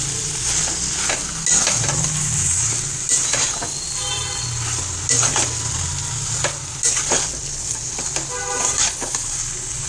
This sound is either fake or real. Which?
real